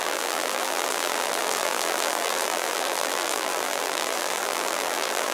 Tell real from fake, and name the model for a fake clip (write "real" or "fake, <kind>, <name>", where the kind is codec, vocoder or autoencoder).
fake, vocoder, BigVGAN v2